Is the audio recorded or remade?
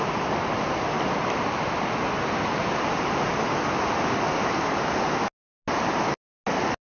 recorded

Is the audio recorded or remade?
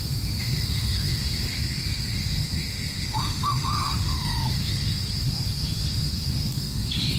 remade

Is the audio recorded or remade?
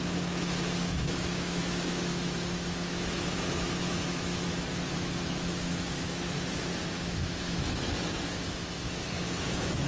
remade